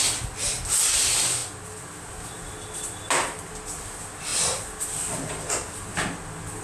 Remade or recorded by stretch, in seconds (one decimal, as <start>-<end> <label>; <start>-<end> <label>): 0.0-6.6 recorded